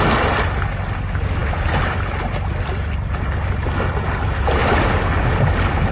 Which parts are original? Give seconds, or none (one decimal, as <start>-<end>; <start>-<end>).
0.0-4.6; 5.4-5.9